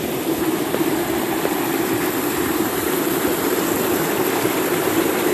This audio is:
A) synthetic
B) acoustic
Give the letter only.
B